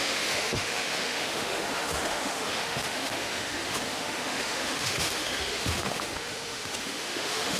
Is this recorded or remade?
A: remade